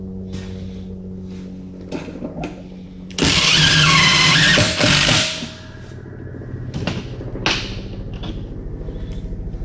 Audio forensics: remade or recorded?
recorded